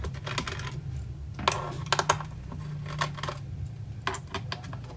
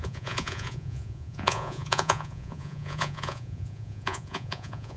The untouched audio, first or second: first